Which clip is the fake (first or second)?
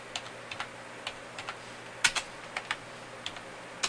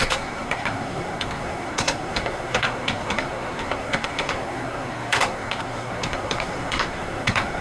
second